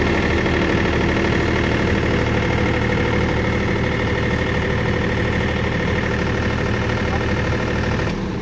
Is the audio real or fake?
real